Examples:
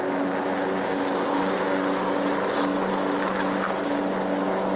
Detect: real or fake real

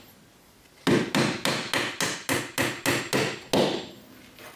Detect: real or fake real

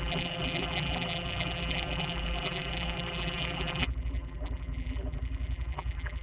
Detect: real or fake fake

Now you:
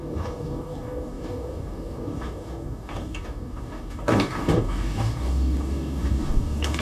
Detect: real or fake fake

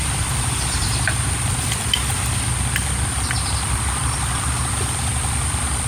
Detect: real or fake real